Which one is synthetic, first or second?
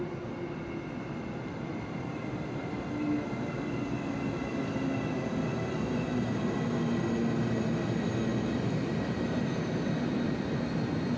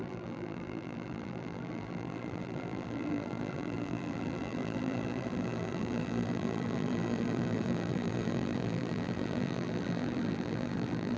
second